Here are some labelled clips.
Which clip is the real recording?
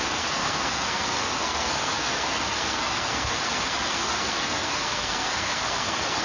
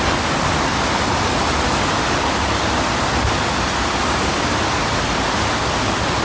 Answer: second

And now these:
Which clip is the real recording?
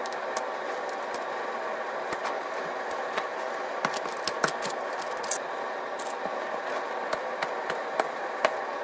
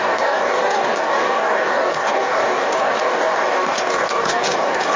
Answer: first